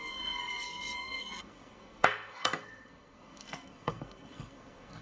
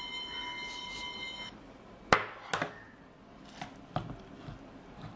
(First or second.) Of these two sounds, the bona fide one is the second